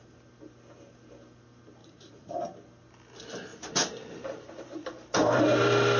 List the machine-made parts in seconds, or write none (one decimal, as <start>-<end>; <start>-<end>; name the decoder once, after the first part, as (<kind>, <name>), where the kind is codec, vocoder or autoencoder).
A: 1.8-2.4 (vocoder, Vocos)